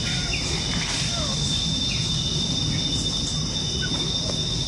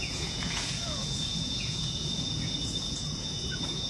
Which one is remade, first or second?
second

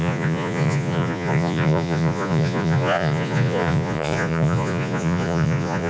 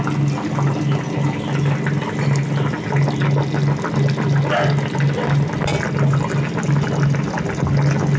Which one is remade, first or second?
first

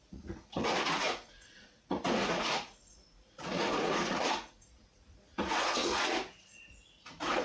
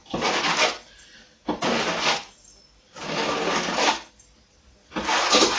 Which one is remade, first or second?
first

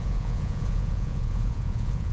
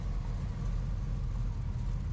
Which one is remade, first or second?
first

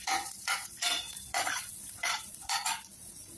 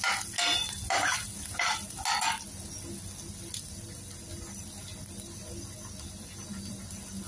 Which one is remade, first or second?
first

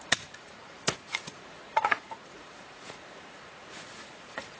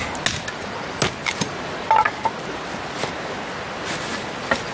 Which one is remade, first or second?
first